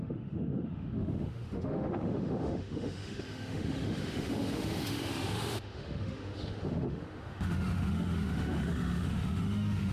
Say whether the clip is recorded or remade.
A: remade